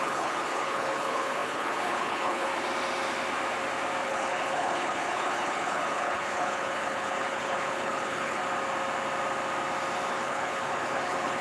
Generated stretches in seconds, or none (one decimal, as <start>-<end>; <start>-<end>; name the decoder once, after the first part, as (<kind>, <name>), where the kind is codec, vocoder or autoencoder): 0.0-2.5 (codec, HILCodec); 4.0-8.4; 10.1-11.4